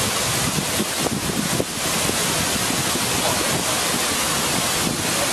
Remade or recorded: recorded